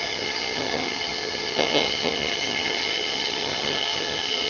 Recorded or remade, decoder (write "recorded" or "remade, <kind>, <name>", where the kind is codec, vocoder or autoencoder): remade, vocoder, HiFi-GAN